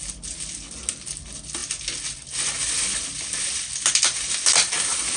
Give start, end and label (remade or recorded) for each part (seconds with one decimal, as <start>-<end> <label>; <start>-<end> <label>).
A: 0.0-5.2 recorded